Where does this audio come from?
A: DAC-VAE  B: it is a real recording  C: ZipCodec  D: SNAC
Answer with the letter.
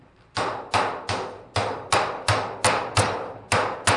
B